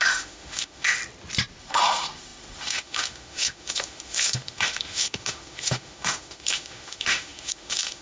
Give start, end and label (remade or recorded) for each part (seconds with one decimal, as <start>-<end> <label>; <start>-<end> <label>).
0.0-1.0 remade; 1.0-1.6 recorded; 1.6-8.0 remade